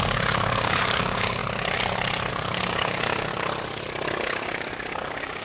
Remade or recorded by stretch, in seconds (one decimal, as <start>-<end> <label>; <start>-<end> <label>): 0.0-1.4 remade; 1.4-2.3 recorded; 2.3-3.3 remade; 3.3-4.2 recorded; 4.2-5.4 remade